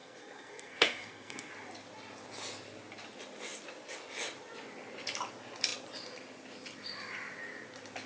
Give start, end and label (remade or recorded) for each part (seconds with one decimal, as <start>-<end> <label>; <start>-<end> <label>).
0.0-1.5 remade; 1.5-8.1 recorded